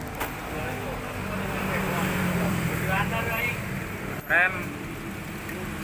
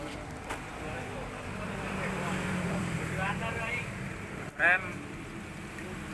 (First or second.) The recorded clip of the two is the first